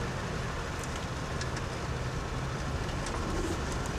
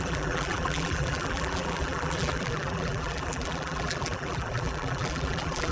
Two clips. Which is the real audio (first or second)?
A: first